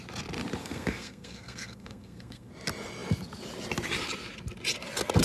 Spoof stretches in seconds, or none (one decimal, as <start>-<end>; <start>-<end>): 0.6-2.5